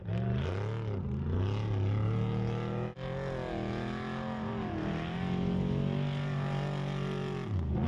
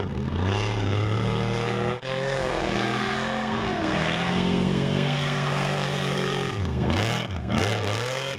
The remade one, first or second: second